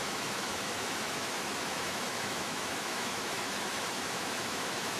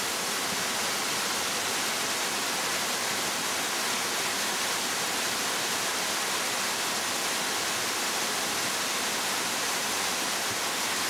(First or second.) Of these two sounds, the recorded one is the second